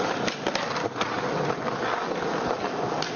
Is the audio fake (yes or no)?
no